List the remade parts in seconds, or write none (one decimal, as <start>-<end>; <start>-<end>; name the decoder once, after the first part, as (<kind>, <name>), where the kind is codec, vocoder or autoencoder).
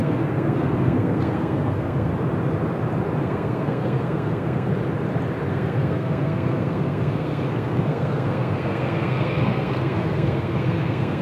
0.0-2.1 (codec, SNAC); 3.2-4.7; 5.5-11.2